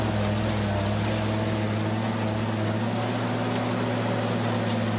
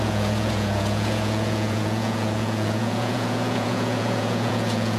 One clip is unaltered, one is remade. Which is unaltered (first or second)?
first